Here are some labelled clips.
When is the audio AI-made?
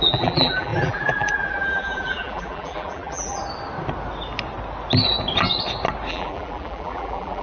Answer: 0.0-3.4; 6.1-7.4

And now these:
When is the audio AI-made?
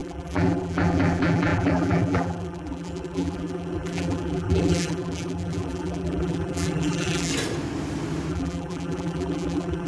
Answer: 0.0-7.3; 8.3-9.9